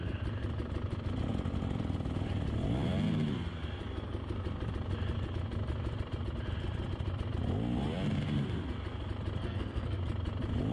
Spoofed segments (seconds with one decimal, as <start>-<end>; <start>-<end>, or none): 9.4-10.0

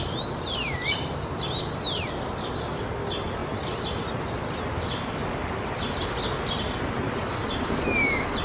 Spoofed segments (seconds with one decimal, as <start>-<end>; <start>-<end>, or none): 0.6-1.7; 3.4-4.1

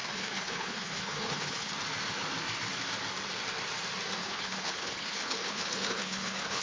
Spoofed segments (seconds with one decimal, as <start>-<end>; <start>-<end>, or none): 0.0-1.7; 4.2-6.6

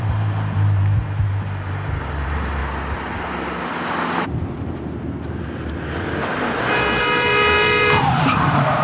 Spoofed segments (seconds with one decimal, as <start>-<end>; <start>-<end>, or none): 0.0-2.6; 7.0-8.8

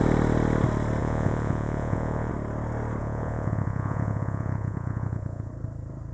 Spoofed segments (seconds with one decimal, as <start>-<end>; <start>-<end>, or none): 1.0-2.3; 3.0-5.5

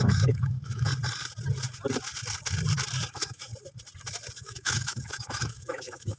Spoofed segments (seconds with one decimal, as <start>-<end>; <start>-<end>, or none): 0.0-0.9; 3.1-3.5; 4.4-6.2

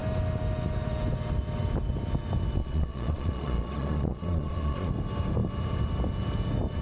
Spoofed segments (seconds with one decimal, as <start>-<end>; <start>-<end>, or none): 2.6-4.9

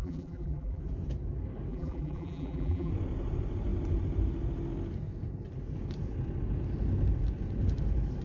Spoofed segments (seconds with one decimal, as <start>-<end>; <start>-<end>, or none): 0.0-0.8; 1.7-2.9